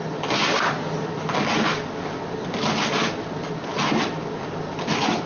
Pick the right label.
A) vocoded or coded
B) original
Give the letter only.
B